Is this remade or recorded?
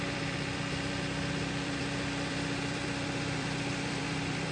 remade